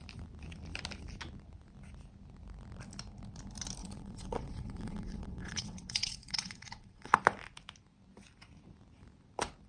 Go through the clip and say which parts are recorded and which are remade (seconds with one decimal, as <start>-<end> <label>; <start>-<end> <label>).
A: 0.0-3.8 recorded; 3.8-7.2 remade; 7.2-9.7 recorded